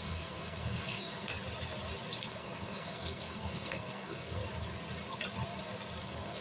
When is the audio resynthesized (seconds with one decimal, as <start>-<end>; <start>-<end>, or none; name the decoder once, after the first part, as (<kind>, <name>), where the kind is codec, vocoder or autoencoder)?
0.0-1.3 (codec, SNAC); 2.2-4.4; 6.0-6.4